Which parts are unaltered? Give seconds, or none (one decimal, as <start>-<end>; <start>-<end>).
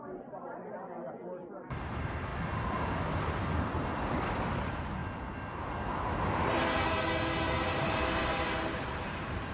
2.3-3.4; 5.0-7.8